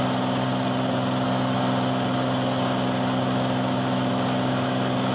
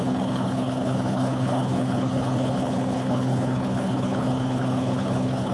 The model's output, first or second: second